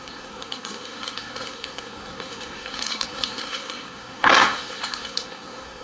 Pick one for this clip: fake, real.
fake